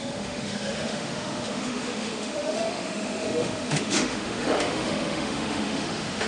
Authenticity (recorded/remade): remade